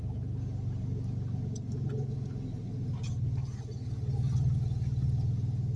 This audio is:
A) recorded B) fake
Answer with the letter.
A